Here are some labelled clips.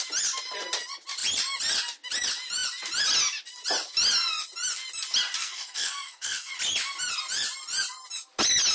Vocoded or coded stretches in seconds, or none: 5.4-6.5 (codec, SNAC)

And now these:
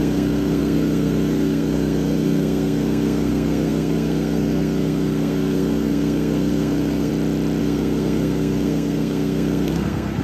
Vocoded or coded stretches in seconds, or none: 0.0-7.1 (codec, SNAC); 7.6-10.2

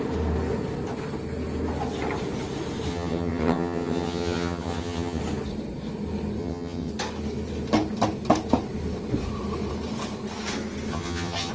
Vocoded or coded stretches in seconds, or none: 2.9-5.2 (vocoder, HiFi-GAN); 6.4-6.9; 10.9-11.5